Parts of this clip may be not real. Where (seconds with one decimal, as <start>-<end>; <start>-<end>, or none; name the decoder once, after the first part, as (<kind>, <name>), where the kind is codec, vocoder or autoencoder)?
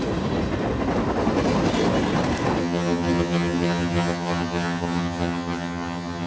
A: 2.6-6.3 (vocoder, HiFi-GAN)